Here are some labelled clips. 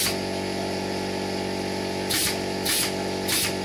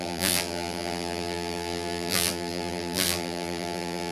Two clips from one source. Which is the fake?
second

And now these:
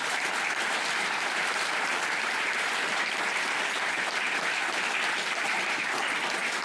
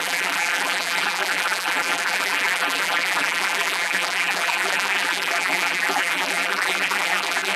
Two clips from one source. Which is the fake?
second